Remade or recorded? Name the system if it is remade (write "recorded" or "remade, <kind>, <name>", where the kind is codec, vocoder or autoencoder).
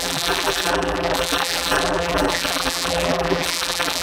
remade, vocoder, BigVGAN v2